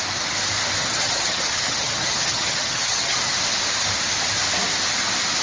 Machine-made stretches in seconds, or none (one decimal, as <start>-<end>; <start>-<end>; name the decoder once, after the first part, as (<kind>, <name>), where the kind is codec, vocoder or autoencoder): 0.8-3.4 (vocoder, HiFi-GAN)